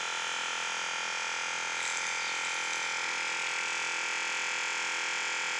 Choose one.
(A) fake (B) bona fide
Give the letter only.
B